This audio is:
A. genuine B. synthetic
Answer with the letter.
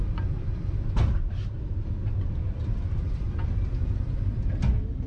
A